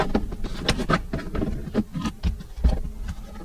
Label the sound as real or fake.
real